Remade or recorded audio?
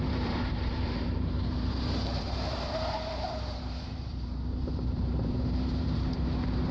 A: remade